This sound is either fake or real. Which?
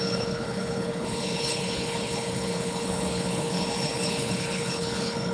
fake